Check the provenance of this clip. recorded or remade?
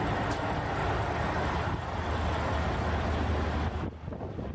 recorded